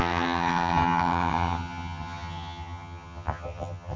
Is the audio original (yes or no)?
no